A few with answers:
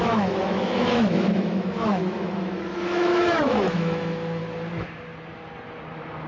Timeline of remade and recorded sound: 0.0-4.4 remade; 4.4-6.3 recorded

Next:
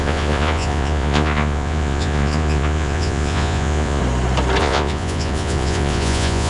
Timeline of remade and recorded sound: 0.0-4.0 remade; 4.0-4.6 recorded; 4.6-6.5 remade

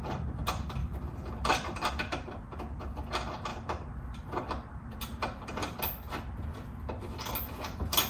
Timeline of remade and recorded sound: 0.0-0.8 recorded; 0.8-1.9 remade; 1.9-8.1 recorded

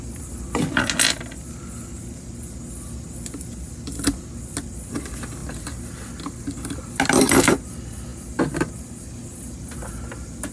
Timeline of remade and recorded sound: 0.0-10.5 recorded

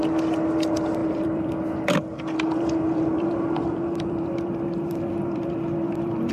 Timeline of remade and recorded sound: 0.0-1.0 recorded; 1.0-1.5 remade; 1.5-2.1 recorded; 2.1-6.3 remade

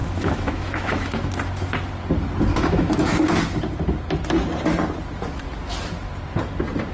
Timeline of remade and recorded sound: 0.0-1.3 remade; 1.3-2.5 recorded; 2.5-3.3 remade; 3.3-6.9 recorded

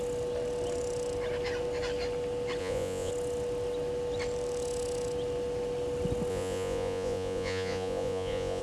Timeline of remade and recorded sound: 0.0-2.6 recorded; 2.6-3.1 remade; 3.1-6.3 recorded; 6.3-8.6 remade

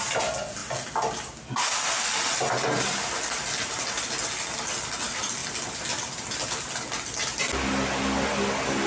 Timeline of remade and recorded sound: 0.0-8.9 recorded